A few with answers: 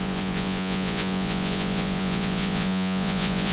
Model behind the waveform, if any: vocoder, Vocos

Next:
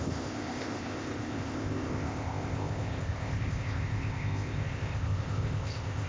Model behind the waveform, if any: codec, ZipCodec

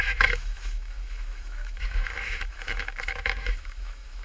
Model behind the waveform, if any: autoencoder, DAC-VAE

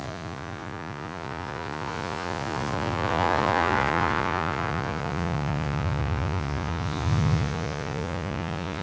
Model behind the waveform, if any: vocoder, Vocos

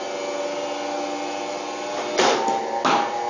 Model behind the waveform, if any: none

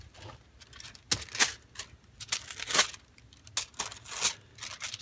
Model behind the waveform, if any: none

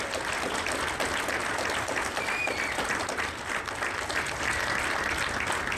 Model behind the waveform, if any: none